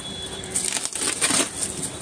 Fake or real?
real